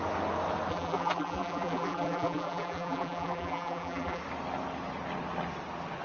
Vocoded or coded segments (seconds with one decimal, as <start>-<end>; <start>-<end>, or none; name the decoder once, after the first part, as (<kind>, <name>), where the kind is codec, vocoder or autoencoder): 0.7-4.2 (vocoder, BigVGAN v2)